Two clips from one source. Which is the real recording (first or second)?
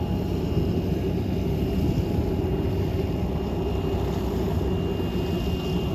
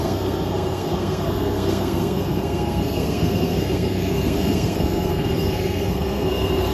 first